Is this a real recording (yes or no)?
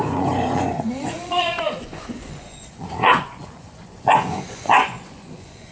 no